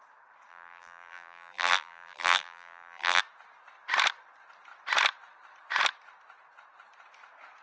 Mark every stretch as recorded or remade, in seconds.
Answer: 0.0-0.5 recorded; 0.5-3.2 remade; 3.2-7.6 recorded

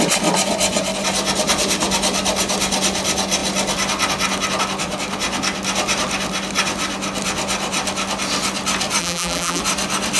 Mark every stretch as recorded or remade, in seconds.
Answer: 0.0-9.0 recorded; 9.0-9.6 remade; 9.6-10.2 recorded

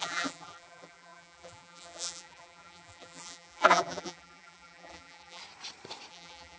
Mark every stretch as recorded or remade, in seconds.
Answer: 0.0-5.4 remade; 5.4-6.1 recorded; 6.1-6.6 remade

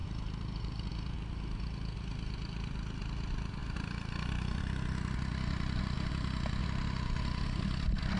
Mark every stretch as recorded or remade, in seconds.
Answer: 0.0-0.9 remade; 0.9-8.2 recorded

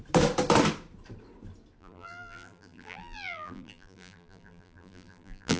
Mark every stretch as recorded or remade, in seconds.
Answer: 0.0-1.8 recorded; 1.8-5.6 remade

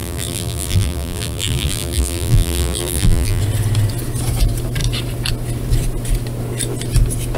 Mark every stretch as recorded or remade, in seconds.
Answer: 0.0-3.4 remade; 3.4-7.4 recorded